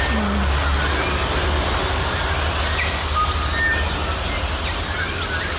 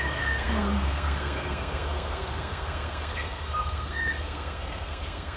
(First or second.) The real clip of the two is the first